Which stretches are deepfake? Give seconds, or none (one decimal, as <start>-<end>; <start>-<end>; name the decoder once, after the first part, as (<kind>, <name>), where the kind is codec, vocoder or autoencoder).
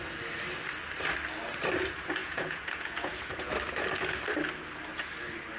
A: 2.2-3.5 (vocoder, Vocos)